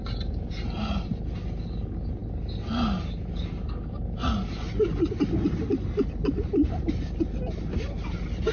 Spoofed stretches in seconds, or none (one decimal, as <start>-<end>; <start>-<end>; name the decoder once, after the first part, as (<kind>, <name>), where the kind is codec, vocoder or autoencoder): none